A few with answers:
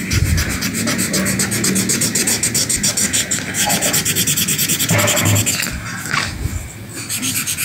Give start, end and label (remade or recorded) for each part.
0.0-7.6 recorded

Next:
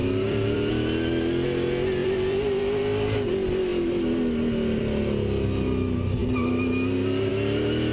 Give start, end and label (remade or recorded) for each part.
0.0-0.7 remade; 0.7-2.0 recorded; 2.0-2.6 remade; 2.6-7.9 recorded

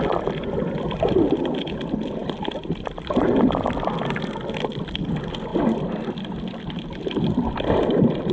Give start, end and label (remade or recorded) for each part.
0.0-5.5 remade; 5.5-6.2 recorded; 6.2-8.3 remade